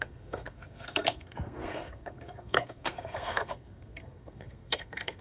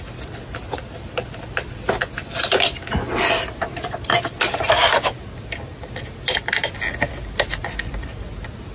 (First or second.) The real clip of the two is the second